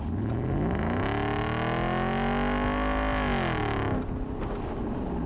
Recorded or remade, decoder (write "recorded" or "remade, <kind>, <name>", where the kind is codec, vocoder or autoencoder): recorded